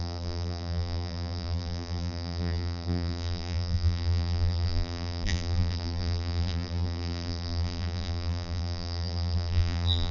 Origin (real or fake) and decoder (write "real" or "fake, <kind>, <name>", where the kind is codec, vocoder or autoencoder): fake, vocoder, BigVGAN v2